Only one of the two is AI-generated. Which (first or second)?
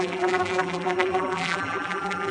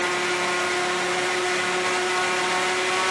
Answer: first